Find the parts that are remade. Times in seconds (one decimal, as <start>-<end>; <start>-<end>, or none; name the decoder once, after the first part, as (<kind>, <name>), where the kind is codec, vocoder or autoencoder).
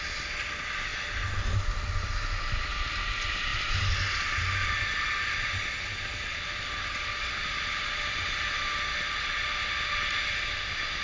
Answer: none